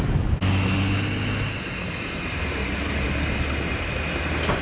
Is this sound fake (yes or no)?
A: no